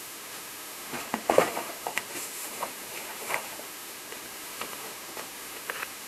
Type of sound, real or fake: fake